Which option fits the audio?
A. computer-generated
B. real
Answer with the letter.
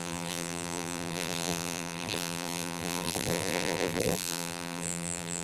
A